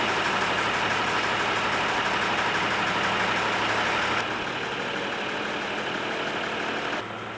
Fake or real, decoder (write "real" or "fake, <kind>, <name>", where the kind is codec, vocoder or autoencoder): real